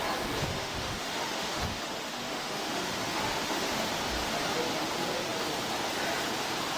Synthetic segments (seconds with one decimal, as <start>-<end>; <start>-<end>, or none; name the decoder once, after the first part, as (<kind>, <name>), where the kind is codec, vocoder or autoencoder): 0.5-3.9 (autoencoder, DAC-VAE)